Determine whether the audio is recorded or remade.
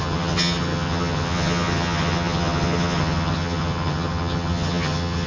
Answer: remade